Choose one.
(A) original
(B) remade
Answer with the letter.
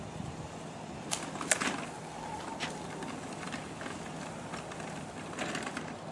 A